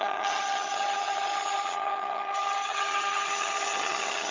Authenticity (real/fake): fake